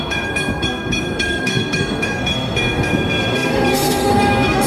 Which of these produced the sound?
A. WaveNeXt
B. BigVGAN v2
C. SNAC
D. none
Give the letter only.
C